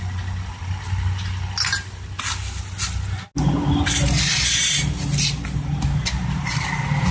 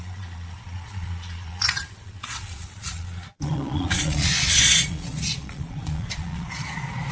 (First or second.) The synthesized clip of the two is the second